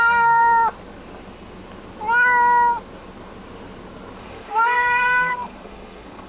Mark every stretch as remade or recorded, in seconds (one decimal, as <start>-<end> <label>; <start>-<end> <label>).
0.0-0.4 remade; 0.4-4.2 recorded; 4.2-6.3 remade

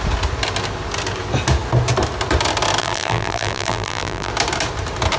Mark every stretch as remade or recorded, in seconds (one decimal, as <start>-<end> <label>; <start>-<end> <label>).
0.0-2.8 recorded; 2.8-4.3 remade; 4.3-5.2 recorded

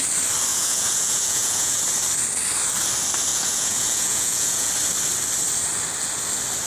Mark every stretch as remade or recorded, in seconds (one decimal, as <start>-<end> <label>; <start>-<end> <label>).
0.0-0.5 recorded; 0.5-1.8 remade; 1.8-3.3 recorded; 3.3-4.7 remade; 4.7-6.7 recorded

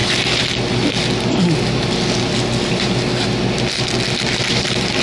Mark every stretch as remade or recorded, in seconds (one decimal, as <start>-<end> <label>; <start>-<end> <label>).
0.0-5.0 recorded

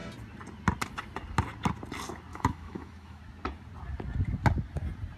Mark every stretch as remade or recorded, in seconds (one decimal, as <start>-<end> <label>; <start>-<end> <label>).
0.0-2.3 recorded; 2.3-3.2 remade; 3.2-5.2 recorded

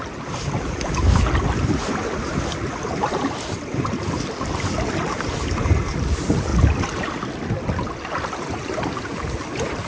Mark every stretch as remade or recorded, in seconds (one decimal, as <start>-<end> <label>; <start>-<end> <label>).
0.0-9.9 recorded

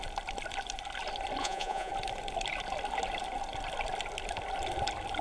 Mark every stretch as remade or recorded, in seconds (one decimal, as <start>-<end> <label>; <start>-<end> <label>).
0.0-1.4 recorded; 1.4-1.9 remade; 1.9-5.2 recorded